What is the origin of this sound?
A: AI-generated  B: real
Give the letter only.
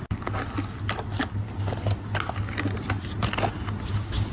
B